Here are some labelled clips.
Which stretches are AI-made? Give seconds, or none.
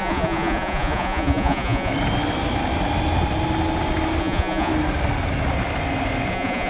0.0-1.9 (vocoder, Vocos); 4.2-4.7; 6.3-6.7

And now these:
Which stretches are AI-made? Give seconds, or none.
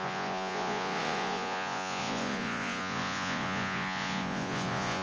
0.0-5.0 (vocoder, Vocos)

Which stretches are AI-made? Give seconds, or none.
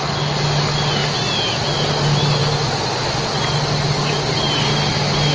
none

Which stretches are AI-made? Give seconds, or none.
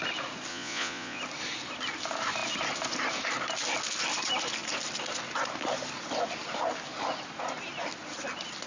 0.5-1.2 (vocoder, Vocos)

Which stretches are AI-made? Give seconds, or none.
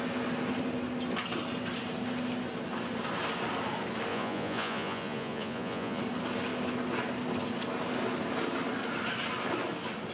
4.1-6.0 (vocoder, Vocos)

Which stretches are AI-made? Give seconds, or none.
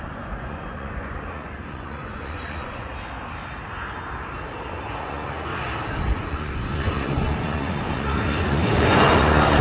0.0-2.9 (vocoder, Vocos); 5.0-5.5; 6.1-9.6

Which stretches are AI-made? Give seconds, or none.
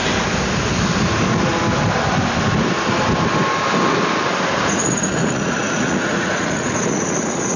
4.6-7.6 (vocoder, Vocos)